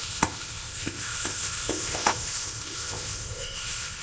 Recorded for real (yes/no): no